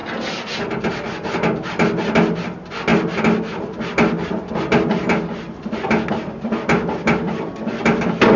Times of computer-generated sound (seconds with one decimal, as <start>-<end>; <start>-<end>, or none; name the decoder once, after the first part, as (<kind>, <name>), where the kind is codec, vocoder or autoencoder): none

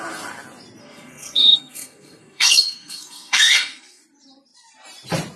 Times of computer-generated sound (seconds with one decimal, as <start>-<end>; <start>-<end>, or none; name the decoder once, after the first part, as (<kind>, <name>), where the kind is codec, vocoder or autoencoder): 0.8-4.0 (codec, SNAC)